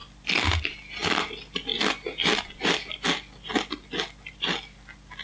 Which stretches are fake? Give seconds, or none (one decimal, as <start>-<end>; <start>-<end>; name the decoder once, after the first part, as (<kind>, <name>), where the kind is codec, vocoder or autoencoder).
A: none